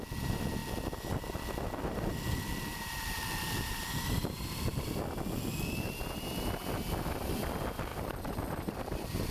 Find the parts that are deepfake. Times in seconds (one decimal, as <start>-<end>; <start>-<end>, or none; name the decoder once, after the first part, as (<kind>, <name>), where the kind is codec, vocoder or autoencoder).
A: 2.7-5.0 (vocoder, BigVGAN v2); 7.9-9.3

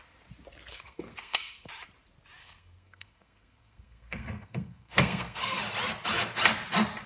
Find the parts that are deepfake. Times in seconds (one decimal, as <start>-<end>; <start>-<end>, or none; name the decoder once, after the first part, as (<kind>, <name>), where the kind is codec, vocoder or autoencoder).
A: 0.7-1.7 (codec, SNAC); 2.4-5.6

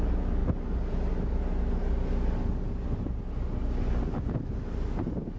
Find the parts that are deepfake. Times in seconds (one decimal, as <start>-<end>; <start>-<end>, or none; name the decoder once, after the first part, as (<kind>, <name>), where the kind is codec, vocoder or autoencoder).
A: none

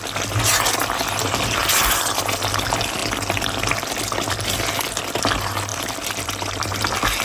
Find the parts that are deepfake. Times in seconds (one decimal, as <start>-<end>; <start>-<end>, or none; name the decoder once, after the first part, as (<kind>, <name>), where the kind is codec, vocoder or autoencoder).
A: 1.6-2.2 (vocoder, BigVGAN v2); 5.7-6.8